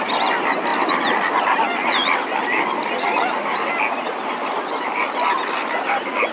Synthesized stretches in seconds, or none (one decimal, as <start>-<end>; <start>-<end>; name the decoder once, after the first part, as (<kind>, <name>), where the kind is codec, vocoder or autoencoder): none